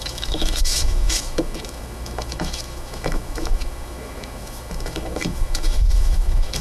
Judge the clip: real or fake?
fake